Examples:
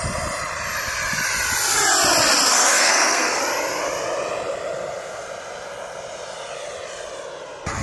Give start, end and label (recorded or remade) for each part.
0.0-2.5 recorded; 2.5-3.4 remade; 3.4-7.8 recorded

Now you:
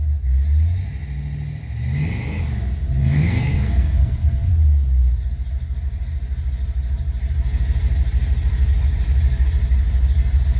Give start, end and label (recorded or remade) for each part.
0.0-3.0 recorded; 3.0-4.5 remade; 4.5-10.6 recorded

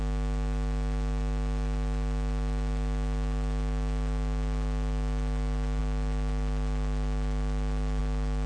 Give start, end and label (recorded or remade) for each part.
0.0-8.5 recorded